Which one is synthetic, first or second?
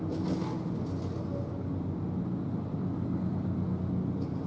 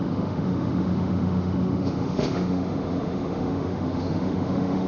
second